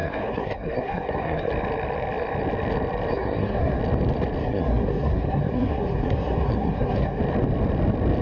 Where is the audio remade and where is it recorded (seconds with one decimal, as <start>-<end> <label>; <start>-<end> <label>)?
0.0-1.5 remade; 1.5-3.1 recorded; 3.1-3.8 remade; 3.8-4.4 recorded; 4.4-7.2 remade; 7.2-8.2 recorded